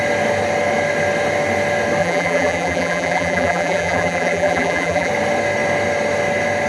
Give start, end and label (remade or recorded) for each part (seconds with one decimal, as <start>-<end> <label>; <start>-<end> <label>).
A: 0.0-2.0 recorded; 2.0-5.1 remade; 5.1-6.7 recorded